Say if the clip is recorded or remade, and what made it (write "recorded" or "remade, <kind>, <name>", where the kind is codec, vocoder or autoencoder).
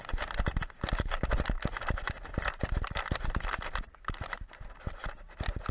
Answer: recorded